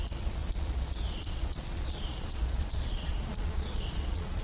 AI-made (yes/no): yes